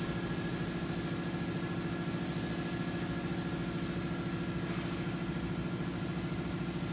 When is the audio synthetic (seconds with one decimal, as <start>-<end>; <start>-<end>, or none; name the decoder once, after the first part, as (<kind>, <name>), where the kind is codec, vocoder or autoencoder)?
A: none

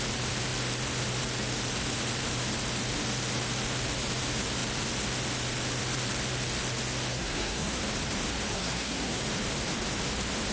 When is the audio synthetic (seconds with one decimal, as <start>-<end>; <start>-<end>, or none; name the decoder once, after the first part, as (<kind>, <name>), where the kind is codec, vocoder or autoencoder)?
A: 7.1-7.8 (codec, SNAC); 8.5-9.2

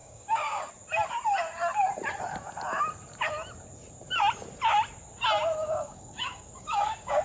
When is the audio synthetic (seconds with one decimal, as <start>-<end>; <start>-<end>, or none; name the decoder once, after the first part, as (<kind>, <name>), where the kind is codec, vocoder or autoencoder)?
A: 0.0-0.7 (codec, DAC); 5.6-7.2

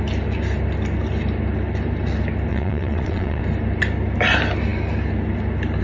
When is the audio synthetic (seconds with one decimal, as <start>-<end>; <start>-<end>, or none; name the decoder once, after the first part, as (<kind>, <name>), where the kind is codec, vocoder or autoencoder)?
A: 2.5-3.4 (vocoder, WaveNeXt)

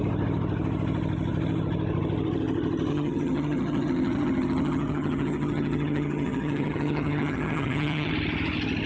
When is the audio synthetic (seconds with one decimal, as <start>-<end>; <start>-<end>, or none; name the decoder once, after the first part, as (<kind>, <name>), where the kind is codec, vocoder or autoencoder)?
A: 2.9-8.1 (vocoder, HiFi-GAN)

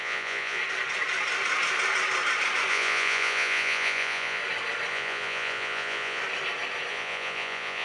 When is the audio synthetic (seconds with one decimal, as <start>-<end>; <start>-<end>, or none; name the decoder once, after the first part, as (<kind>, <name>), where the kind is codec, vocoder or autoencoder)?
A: 0.0-0.6 (vocoder, Vocos); 2.7-4.4; 4.9-6.2; 6.9-7.8